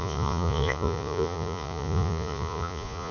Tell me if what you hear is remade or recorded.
remade